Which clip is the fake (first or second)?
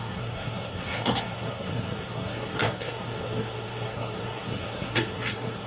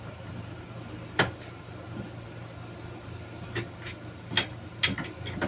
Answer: first